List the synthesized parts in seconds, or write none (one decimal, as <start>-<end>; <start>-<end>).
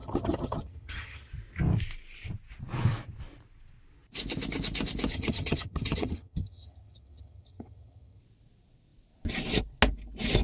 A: 0.0-1.3; 5.1-8.2